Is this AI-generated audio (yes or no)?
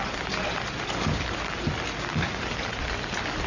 no